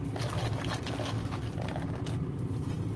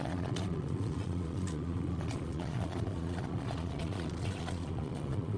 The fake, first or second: second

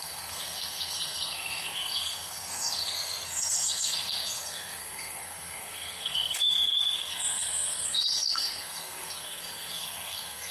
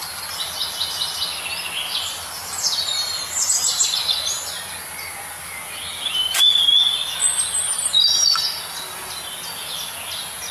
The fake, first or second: first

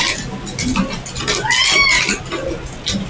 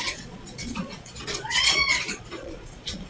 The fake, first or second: second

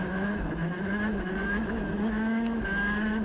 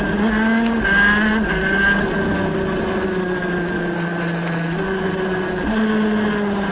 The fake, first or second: first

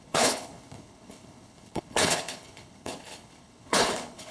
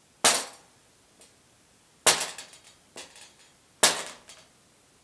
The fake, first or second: first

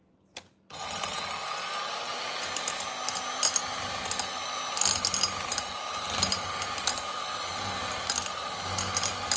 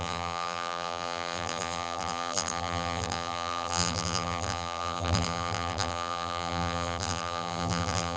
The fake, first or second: second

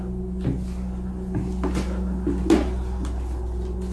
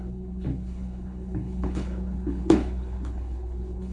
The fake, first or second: second